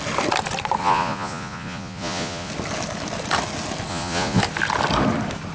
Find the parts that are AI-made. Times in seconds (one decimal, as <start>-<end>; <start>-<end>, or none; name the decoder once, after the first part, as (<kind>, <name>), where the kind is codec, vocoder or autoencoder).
0.8-2.5 (vocoder, Vocos); 3.9-4.4